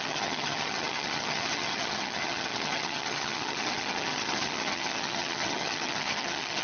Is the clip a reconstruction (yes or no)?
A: yes